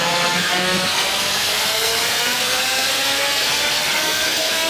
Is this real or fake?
fake